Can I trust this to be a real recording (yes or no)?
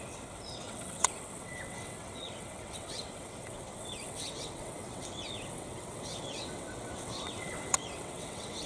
no